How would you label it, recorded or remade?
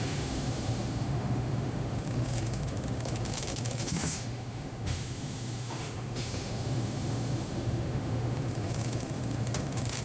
remade